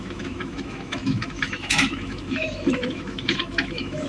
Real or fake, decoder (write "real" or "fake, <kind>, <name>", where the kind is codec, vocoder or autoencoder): fake, autoencoder, DAC-VAE